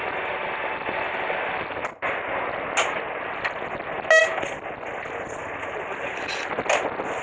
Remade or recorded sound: recorded